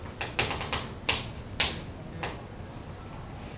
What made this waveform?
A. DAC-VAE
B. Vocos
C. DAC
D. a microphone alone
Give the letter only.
D